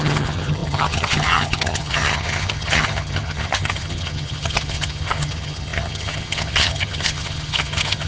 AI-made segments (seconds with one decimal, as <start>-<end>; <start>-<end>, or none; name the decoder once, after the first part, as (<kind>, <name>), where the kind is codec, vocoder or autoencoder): 0.0-8.1 (vocoder, HiFi-GAN)